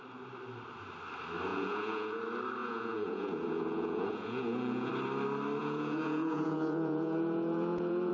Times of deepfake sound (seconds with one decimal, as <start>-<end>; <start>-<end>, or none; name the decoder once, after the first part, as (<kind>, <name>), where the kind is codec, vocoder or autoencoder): 1.5-2.2 (vocoder, Vocos); 2.6-4.9; 5.6-8.1